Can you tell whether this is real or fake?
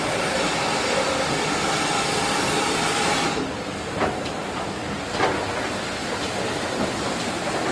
real